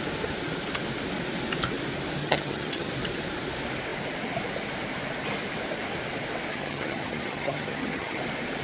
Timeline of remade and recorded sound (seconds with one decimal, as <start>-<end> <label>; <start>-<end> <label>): 0.0-2.2 recorded; 2.2-2.9 remade; 2.9-6.5 recorded; 6.5-8.2 remade; 8.2-8.6 recorded